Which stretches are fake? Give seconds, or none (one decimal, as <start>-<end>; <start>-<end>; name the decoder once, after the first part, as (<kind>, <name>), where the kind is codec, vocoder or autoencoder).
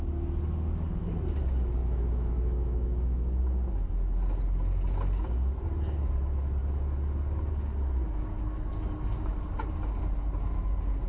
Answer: 1.8-3.4 (autoencoder, DAC-VAE)